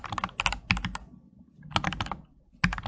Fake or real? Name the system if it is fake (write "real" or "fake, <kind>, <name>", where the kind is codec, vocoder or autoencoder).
real